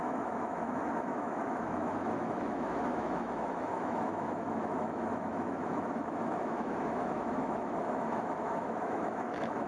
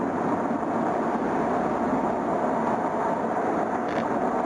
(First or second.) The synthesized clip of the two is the first